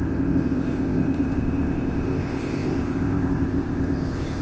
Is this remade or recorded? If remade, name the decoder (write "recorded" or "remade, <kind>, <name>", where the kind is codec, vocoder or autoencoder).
remade, codec, ZipCodec